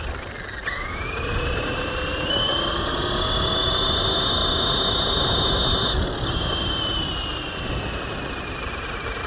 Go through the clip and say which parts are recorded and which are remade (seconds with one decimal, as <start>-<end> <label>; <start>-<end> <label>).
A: 0.0-9.3 recorded